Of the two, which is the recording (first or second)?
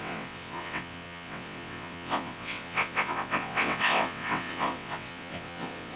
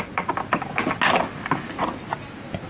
second